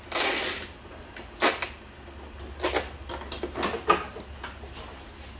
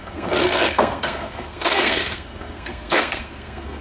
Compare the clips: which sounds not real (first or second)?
second